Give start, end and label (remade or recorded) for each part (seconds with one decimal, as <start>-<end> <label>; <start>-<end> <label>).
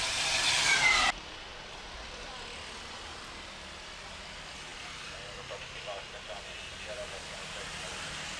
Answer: 0.0-8.4 recorded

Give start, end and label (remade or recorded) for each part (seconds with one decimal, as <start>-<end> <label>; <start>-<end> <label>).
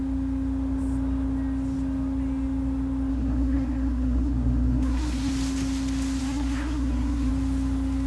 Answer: 0.0-3.1 recorded; 3.1-5.3 remade; 5.3-6.2 recorded; 6.2-7.3 remade; 7.3-8.1 recorded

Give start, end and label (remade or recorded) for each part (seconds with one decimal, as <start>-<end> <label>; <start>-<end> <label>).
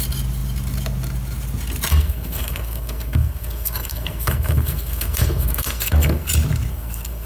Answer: 0.0-1.9 recorded; 1.9-6.3 remade; 6.3-6.7 recorded; 6.7-7.3 remade